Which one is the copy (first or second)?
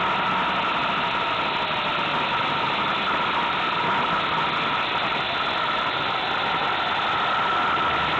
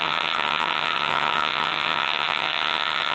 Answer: second